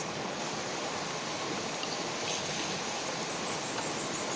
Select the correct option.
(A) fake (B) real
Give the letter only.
B